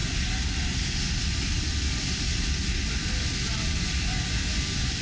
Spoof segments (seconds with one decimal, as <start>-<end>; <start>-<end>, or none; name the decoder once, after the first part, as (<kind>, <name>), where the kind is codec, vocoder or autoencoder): none